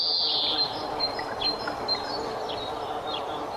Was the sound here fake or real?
real